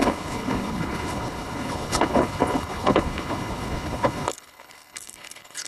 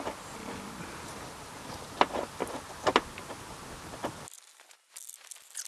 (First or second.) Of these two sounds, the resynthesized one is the first